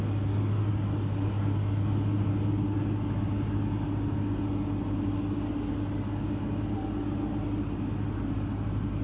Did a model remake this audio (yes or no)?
no